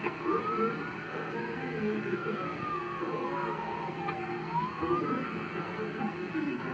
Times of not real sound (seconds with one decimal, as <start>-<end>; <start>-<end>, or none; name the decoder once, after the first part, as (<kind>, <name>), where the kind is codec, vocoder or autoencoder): 0.0-0.4 (codec, SNAC); 1.0-6.7